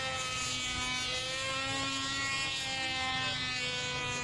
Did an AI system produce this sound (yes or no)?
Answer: no